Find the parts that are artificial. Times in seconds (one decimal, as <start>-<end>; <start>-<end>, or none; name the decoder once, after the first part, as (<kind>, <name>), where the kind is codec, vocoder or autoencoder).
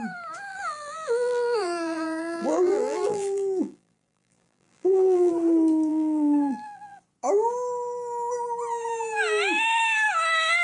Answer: 0.5-5.3 (vocoder, BigVGAN v2); 5.9-7.0